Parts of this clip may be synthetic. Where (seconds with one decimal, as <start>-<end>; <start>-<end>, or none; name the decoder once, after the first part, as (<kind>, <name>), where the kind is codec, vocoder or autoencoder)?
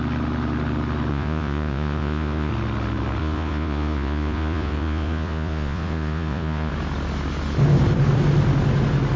1.1-2.5 (vocoder, Vocos); 3.2-6.7